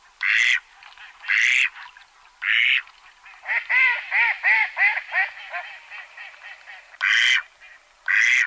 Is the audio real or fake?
real